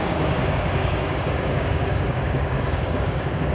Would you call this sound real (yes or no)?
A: no